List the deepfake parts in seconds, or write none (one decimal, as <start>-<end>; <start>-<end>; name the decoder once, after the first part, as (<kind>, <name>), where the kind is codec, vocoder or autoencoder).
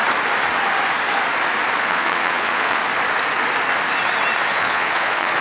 1.8-2.8 (vocoder, Vocos); 4.5-5.4